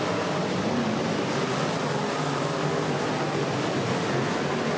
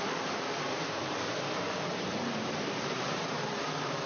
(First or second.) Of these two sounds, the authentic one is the first